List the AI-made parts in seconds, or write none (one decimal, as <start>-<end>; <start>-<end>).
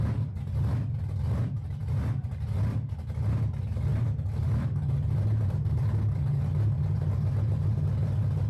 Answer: none